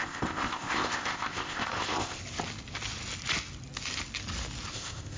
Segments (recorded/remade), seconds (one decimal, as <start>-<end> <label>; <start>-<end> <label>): 0.0-2.2 remade; 2.2-4.7 recorded; 4.7-5.2 remade